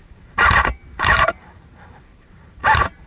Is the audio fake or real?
fake